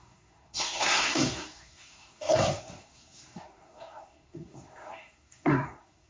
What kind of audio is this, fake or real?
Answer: fake